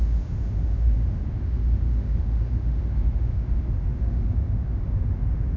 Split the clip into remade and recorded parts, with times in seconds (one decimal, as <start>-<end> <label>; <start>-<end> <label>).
0.0-5.6 remade